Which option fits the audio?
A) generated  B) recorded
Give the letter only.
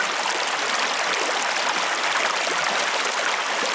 B